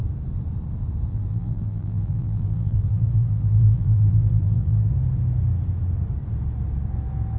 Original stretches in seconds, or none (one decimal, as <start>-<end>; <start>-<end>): 0.0-1.1; 4.9-7.4